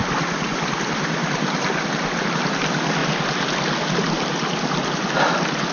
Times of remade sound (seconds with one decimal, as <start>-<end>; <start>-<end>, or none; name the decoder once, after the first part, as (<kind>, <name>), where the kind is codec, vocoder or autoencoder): 0.0-1.9 (vocoder, BigVGAN v2)

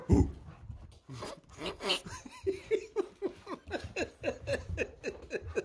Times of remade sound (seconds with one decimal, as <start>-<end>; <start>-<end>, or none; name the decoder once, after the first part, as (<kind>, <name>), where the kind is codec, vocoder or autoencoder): none

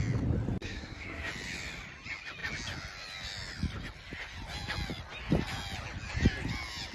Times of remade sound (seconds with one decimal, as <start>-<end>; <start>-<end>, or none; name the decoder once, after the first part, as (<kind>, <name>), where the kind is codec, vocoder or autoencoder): 0.6-1.3 (codec, SNAC)

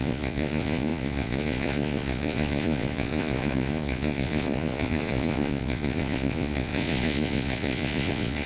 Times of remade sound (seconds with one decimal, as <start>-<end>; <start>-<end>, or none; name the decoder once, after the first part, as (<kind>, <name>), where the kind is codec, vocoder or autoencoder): 0.0-8.5 (vocoder, Vocos)

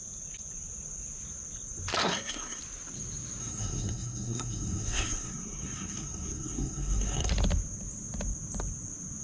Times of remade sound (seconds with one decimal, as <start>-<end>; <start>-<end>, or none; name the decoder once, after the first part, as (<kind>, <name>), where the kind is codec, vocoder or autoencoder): 2.0-2.6 (codec, SNAC); 3.4-7.3

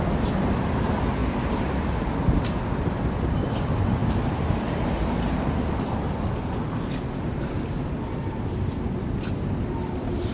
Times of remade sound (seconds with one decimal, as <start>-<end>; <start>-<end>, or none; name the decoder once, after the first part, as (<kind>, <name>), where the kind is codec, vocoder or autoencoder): 1.2-1.8 (vocoder, BigVGAN v2); 4.0-6.3